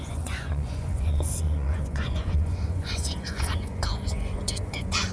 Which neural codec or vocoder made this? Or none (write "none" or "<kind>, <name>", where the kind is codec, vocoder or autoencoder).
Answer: vocoder, Vocos